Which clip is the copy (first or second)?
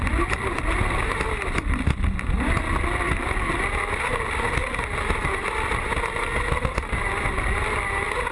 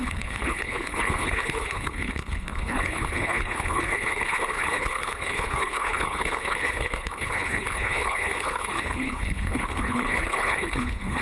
second